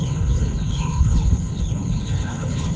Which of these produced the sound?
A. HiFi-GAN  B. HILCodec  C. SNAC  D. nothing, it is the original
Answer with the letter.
B